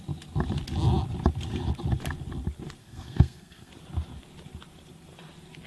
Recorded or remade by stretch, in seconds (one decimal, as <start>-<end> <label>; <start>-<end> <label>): 0.0-2.8 recorded; 2.8-3.7 remade; 3.7-5.7 recorded